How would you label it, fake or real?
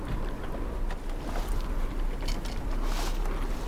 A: real